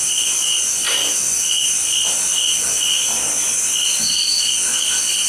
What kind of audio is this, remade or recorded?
recorded